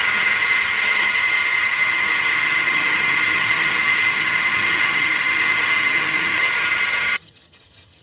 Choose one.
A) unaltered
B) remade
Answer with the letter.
B